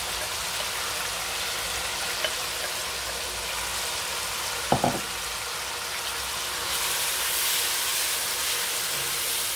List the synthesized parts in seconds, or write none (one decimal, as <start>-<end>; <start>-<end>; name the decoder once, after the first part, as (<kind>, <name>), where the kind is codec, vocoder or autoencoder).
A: none